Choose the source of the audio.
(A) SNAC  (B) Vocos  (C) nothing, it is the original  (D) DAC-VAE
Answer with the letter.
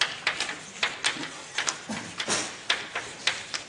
C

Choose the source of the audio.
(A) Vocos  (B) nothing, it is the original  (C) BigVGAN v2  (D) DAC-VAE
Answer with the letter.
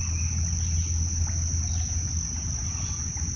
B